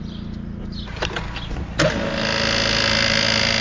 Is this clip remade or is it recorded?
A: recorded